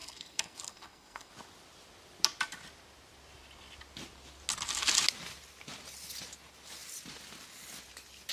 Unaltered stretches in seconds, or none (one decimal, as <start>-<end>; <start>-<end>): 1.3-8.3